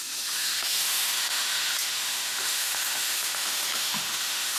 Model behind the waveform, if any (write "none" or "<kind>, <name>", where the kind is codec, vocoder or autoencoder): autoencoder, DAC-VAE